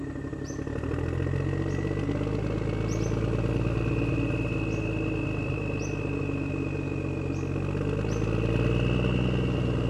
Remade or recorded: recorded